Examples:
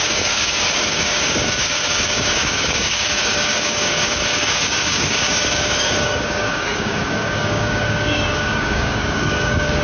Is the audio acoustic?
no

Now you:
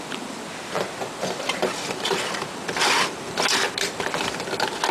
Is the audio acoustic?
yes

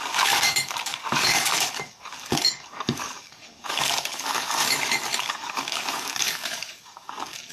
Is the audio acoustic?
no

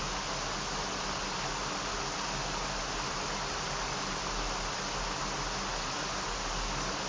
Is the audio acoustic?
yes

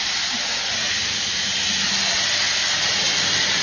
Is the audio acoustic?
yes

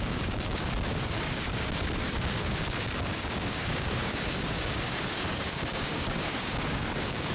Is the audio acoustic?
no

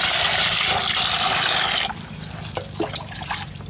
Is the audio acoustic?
yes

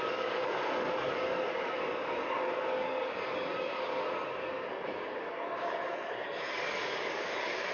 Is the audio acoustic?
no